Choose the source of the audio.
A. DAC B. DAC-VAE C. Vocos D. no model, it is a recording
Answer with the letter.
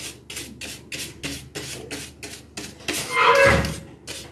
D